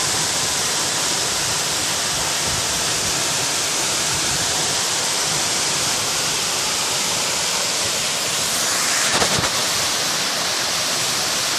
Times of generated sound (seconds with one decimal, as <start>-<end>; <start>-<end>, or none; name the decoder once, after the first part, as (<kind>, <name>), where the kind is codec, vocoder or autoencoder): 0.0-9.6 (vocoder, BigVGAN v2); 11.1-11.6